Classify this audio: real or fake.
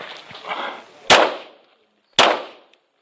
real